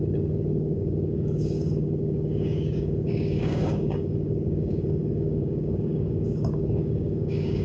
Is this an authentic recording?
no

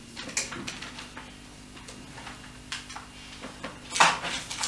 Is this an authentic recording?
yes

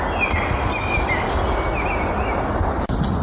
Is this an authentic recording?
yes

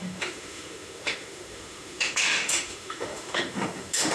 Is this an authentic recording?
no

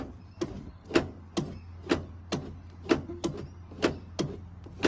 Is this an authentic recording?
yes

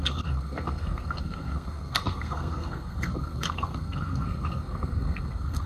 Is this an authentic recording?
no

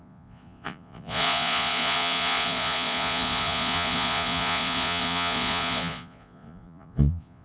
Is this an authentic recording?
no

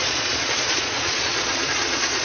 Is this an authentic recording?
no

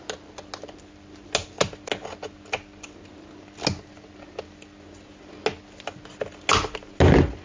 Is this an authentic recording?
yes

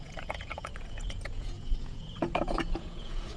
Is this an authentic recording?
no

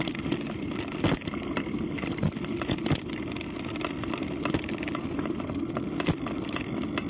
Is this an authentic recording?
yes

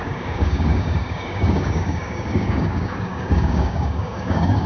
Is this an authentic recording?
no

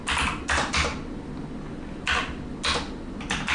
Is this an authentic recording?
yes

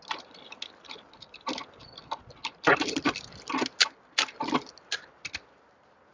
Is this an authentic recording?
yes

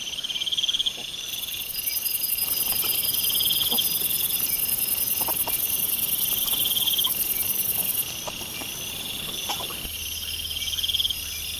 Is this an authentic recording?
yes